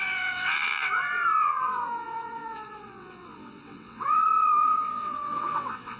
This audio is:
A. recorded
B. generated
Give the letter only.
B